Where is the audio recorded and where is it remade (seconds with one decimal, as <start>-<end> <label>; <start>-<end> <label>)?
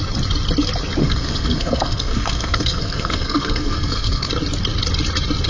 0.0-1.0 recorded; 1.0-4.3 remade; 4.3-5.5 recorded